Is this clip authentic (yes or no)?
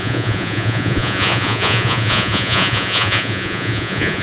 no